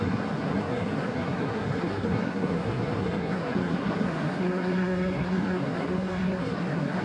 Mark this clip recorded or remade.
remade